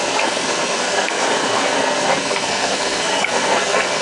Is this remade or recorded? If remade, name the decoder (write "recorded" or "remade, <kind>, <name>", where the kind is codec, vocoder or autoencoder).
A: remade, codec, SNAC